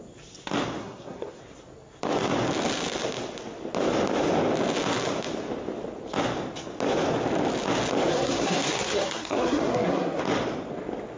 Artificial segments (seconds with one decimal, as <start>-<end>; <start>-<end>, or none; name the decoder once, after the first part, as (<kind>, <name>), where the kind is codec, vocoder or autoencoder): 0.8-1.4 (codec, SNAC); 8.1-10.2